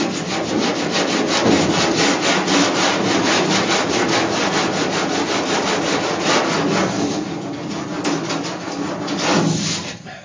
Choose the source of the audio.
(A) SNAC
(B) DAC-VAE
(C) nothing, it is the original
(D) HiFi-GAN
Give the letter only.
C